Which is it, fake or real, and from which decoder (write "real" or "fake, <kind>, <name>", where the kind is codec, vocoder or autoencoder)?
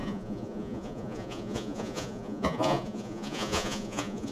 fake, vocoder, Vocos